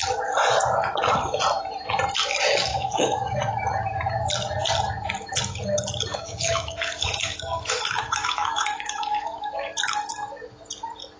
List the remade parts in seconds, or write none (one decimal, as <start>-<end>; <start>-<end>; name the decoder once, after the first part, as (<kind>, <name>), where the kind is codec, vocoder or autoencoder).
2.7-3.4 (autoencoder, DAC-VAE); 6.1-9.7